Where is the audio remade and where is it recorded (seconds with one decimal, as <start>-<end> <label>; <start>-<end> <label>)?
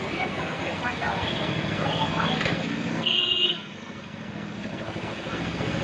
0.0-5.8 remade